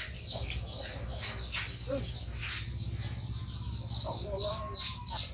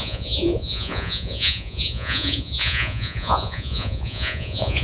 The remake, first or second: second